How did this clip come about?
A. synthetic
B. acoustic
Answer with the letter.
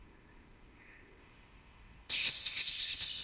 A